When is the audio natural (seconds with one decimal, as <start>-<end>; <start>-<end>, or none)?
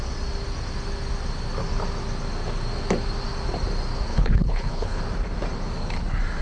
0.0-4.1; 5.0-6.4